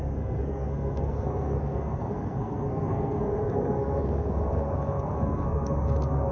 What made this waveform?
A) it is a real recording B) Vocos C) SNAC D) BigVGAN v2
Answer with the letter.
C